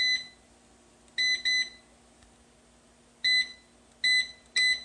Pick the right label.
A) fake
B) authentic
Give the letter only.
B